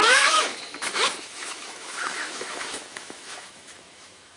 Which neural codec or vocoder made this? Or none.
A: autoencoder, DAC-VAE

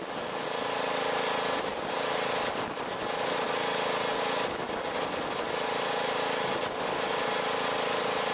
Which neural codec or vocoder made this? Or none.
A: none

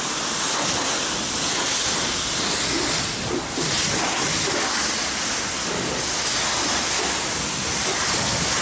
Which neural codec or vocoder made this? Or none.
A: none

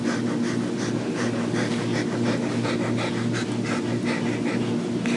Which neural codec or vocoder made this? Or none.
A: none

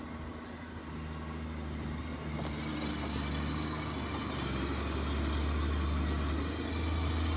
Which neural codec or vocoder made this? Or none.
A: none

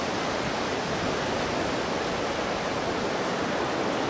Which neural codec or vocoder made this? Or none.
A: none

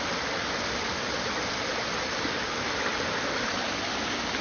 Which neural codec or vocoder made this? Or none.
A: none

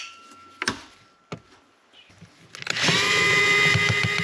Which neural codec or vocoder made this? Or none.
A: none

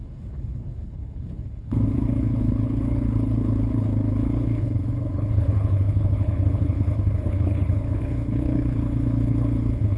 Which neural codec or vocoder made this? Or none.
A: codec, HILCodec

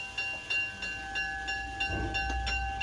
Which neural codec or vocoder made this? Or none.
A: none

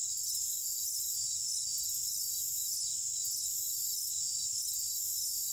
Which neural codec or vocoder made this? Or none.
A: none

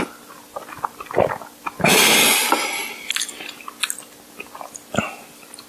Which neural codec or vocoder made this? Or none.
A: none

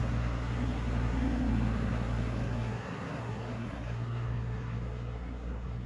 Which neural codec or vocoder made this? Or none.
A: codec, SNAC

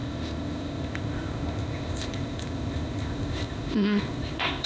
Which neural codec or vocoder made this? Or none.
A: codec, ZipCodec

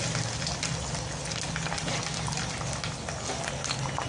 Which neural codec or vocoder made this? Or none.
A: none